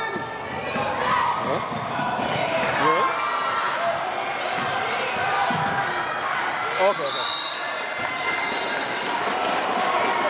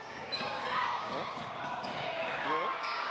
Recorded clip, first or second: first